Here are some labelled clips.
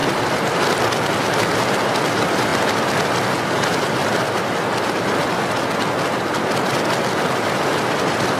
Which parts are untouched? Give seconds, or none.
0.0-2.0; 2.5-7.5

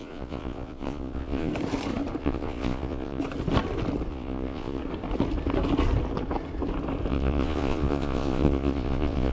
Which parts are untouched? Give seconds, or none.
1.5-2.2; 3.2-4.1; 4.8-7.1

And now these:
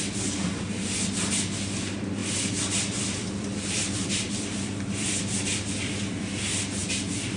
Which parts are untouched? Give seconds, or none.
0.0-2.2; 6.2-6.8